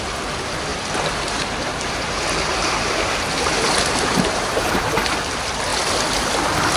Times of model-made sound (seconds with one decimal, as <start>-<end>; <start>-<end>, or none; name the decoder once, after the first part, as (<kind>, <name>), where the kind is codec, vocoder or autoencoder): 0.7-4.8 (vocoder, BigVGAN v2)